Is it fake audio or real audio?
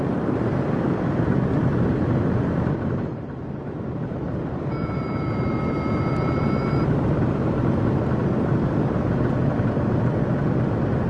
fake